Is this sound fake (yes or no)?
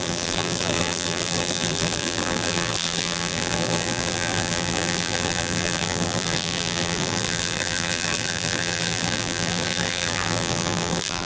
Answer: yes